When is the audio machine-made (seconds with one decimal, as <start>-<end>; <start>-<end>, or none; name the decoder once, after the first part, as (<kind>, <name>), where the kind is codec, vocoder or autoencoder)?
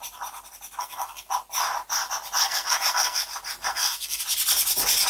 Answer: 0.8-1.3 (codec, SNAC); 2.4-3.2; 3.7-4.2